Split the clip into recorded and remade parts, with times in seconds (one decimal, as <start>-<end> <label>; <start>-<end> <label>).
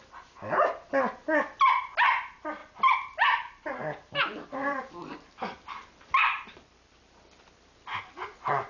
0.0-2.6 recorded; 2.6-7.5 remade; 7.5-8.7 recorded